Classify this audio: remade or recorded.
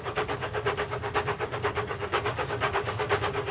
remade